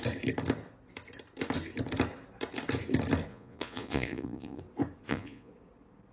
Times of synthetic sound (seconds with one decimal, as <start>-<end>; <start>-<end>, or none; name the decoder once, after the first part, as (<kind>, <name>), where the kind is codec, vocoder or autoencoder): 3.3-4.6 (vocoder, Vocos); 5.0-5.5